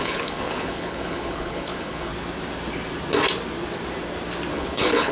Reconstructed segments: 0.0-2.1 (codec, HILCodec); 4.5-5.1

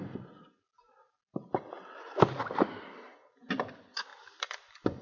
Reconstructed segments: 4.1-5.0 (vocoder, BigVGAN v2)